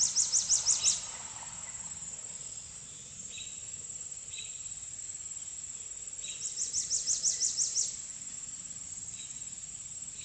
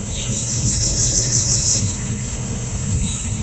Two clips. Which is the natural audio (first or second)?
first